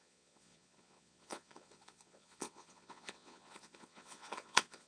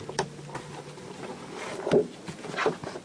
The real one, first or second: second